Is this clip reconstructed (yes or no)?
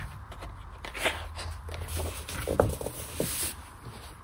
no